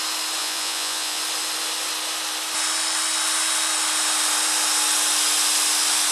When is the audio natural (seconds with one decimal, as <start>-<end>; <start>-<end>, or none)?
0.0-0.4; 1.2-6.1